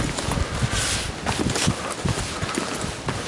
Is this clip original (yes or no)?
yes